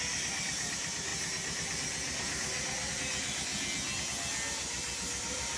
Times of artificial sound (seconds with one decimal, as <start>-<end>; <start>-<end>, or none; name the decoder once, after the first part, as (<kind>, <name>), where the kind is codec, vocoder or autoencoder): none